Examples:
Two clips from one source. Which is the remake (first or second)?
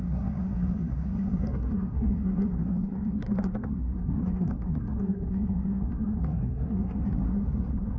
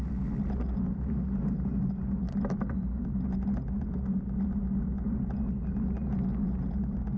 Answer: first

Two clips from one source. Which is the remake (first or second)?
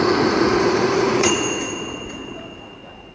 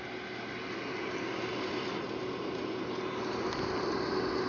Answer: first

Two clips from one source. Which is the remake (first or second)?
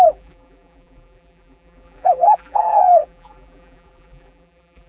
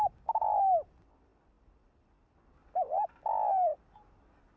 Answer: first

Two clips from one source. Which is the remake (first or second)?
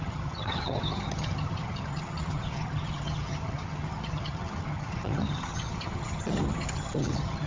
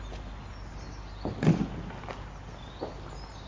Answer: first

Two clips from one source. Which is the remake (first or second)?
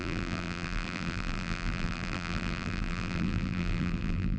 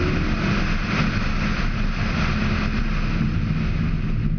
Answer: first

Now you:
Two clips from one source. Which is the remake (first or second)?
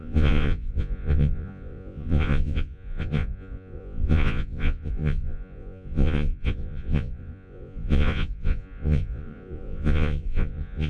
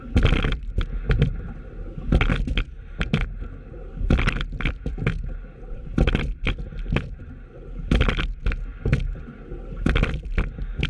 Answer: first